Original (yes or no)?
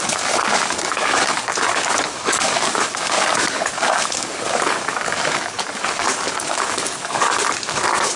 no